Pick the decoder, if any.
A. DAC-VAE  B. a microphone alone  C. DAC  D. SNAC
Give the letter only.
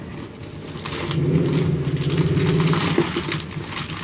B